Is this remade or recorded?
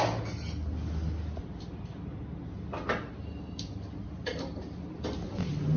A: recorded